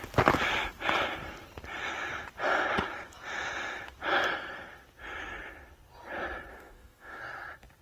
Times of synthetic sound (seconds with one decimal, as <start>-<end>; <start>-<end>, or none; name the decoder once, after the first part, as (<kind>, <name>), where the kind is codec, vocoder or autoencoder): 6.5-7.2 (autoencoder, DAC-VAE)